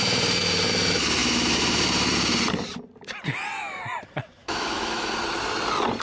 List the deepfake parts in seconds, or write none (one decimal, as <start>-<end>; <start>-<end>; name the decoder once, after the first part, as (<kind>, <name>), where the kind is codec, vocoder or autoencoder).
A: 4.4-5.1 (autoencoder, DAC-VAE)